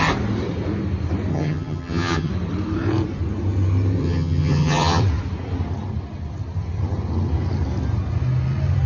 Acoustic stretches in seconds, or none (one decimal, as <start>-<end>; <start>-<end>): 0.0-1.3; 2.3-4.0; 5.0-8.9